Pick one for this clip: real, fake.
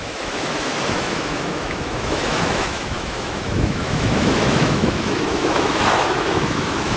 fake